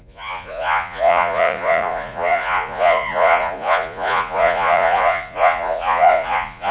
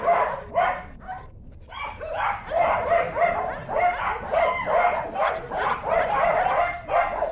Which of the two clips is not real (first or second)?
first